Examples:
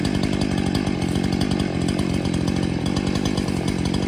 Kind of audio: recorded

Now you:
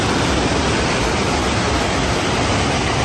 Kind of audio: recorded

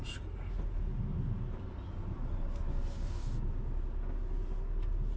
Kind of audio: recorded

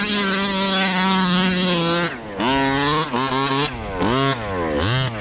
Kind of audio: recorded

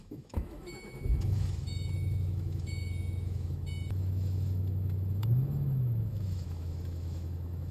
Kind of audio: remade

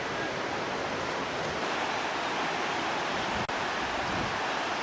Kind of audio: recorded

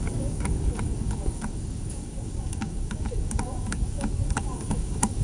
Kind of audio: remade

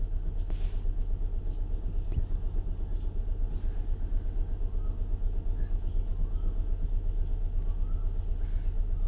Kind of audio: recorded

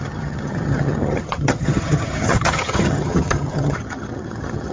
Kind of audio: remade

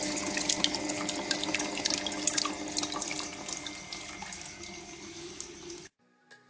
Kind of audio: recorded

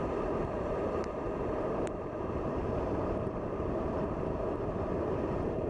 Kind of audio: remade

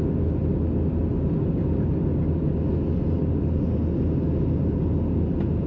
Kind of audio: recorded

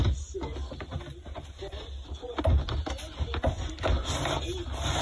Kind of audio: recorded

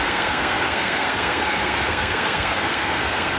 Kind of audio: remade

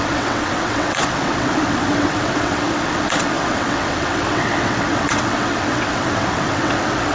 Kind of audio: remade